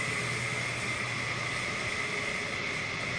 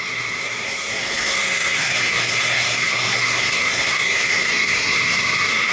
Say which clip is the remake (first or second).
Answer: second